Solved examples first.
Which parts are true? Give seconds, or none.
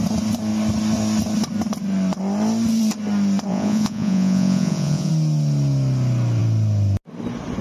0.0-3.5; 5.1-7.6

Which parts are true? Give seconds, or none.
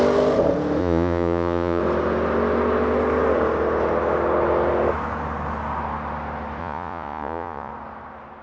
0.0-0.8; 1.8-6.6; 7.7-8.4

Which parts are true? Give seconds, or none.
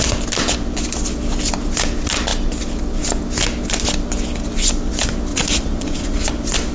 0.0-5.3; 6.3-6.7